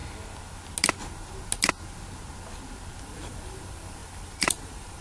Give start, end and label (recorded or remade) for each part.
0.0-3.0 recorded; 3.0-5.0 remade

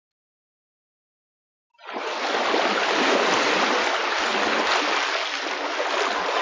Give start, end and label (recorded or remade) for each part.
0.0-6.4 recorded

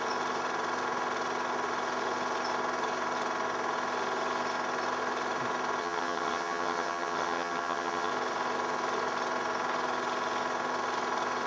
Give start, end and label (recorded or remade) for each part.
0.0-5.8 recorded; 5.8-8.1 remade; 8.1-11.5 recorded

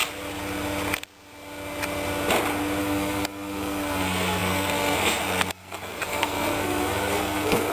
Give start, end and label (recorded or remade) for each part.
0.0-2.8 recorded; 2.8-7.7 remade

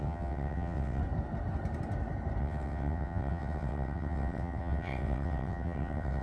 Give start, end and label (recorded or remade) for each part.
0.0-1.0 remade; 1.0-2.4 recorded; 2.4-6.2 remade

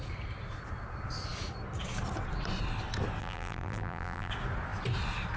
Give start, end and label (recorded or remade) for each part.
0.0-3.2 recorded; 3.2-4.3 remade; 4.3-5.4 recorded

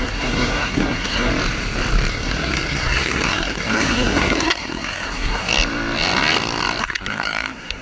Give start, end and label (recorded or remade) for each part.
0.0-1.3 remade; 1.3-2.1 recorded; 2.1-5.5 remade; 5.5-6.8 recorded; 6.8-7.8 remade